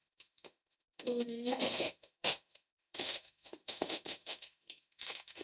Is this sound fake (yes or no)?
yes